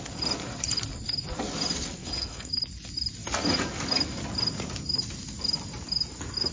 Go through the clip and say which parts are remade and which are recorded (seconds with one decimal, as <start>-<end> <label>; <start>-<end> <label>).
0.0-2.0 recorded; 2.0-2.5 remade; 2.5-6.5 recorded